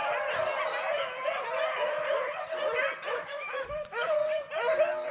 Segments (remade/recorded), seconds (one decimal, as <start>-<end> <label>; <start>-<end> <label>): 0.0-3.1 recorded; 3.1-4.2 remade; 4.2-5.1 recorded